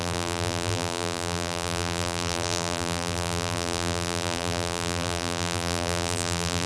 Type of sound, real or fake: fake